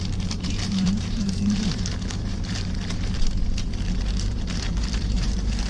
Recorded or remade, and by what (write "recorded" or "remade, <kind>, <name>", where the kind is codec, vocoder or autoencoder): remade, vocoder, BigVGAN v2